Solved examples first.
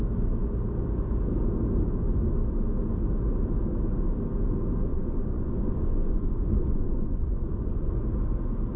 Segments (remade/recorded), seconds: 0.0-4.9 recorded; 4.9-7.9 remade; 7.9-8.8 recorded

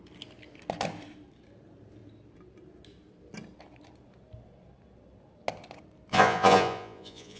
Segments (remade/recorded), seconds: 0.0-6.1 recorded; 6.1-7.4 remade

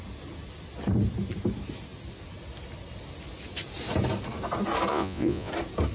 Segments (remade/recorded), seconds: 0.0-4.9 recorded; 4.9-5.5 remade; 5.5-5.9 recorded

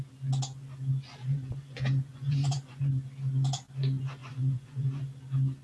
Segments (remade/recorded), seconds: 0.0-1.2 recorded; 1.2-2.9 remade; 2.9-4.2 recorded; 4.2-5.0 remade; 5.0-5.6 recorded

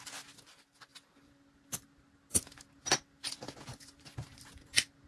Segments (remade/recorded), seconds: 0.0-5.1 recorded

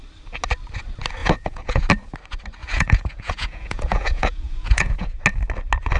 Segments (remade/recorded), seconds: 0.0-1.2 recorded; 1.2-1.9 remade; 1.9-2.6 recorded; 2.6-5.2 remade; 5.2-6.0 recorded

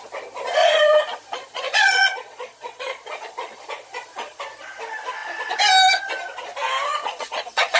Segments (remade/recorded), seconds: 0.0-0.6 recorded; 0.6-4.4 remade; 4.4-6.9 recorded; 6.9-7.8 remade